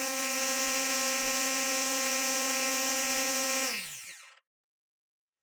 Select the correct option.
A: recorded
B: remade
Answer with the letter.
B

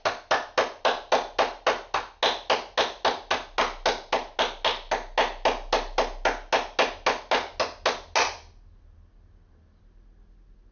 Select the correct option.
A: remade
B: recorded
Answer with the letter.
B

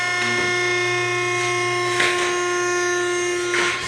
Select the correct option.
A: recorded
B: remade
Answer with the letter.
A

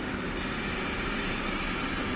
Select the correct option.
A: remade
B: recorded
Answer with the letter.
B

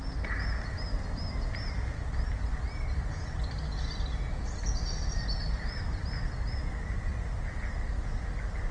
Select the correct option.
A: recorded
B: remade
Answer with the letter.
A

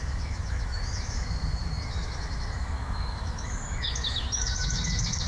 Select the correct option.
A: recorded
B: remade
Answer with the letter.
B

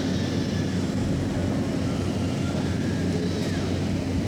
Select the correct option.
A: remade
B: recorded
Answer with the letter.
B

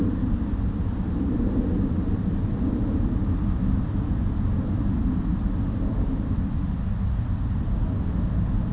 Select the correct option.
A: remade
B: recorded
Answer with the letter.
B